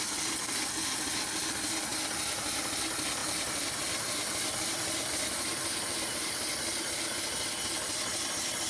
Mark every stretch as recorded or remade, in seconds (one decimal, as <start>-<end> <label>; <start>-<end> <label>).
0.0-1.9 recorded; 1.9-2.8 remade; 2.8-3.2 recorded; 3.2-7.2 remade; 7.2-8.7 recorded

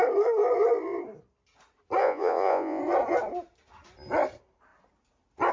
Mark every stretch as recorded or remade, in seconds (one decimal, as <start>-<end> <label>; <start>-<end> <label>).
0.0-2.0 recorded; 2.0-2.8 remade; 2.8-5.5 recorded